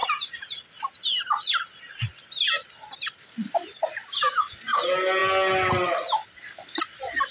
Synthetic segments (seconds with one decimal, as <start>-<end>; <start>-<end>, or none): none